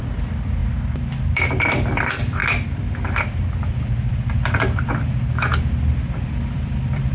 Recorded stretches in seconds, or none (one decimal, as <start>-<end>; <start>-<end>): 0.6-1.6

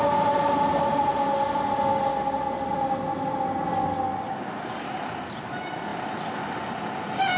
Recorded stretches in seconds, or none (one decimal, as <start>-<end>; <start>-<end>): 0.0-7.4

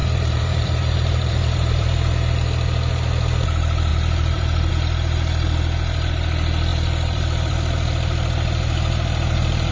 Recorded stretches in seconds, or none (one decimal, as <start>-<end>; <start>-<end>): 2.1-3.9; 4.7-6.7; 7.5-9.7